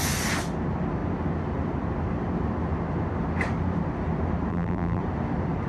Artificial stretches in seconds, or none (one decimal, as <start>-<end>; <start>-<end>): 4.5-5.0